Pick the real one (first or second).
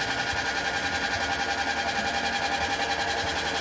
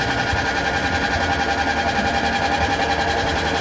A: first